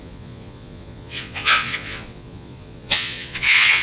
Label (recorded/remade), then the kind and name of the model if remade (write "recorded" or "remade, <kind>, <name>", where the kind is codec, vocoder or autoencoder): remade, vocoder, Vocos